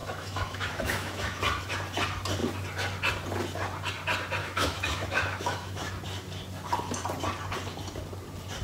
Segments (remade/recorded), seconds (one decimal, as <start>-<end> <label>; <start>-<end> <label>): 0.0-1.4 remade; 1.4-4.4 recorded; 4.4-5.9 remade; 5.9-8.6 recorded